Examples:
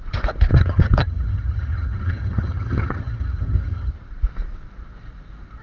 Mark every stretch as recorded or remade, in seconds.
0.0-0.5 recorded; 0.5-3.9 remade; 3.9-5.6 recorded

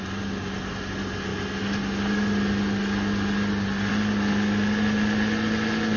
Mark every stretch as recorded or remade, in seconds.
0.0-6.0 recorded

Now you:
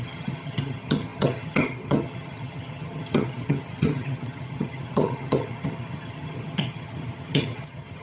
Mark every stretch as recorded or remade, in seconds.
0.0-8.0 remade

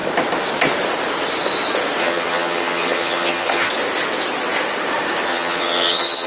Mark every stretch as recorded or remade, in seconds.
0.0-2.0 recorded; 2.0-3.7 remade; 3.7-5.3 recorded; 5.3-6.3 remade

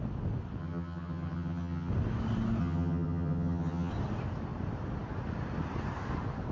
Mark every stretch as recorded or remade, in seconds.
0.0-0.6 recorded; 0.6-1.9 remade; 1.9-2.6 recorded; 2.6-3.9 remade; 3.9-6.5 recorded

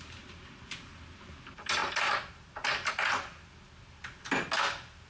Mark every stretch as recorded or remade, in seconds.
0.0-5.1 recorded

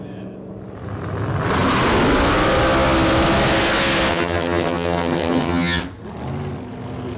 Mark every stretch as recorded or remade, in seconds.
0.0-4.1 recorded; 4.1-5.8 remade; 5.8-7.2 recorded

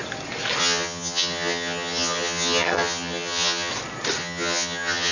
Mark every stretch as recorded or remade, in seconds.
0.0-0.6 recorded; 0.6-3.7 remade; 3.7-4.2 recorded; 4.2-5.1 remade